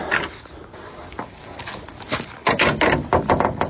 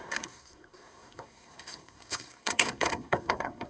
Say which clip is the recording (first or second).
first